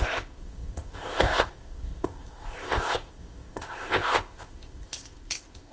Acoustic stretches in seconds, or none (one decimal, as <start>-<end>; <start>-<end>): none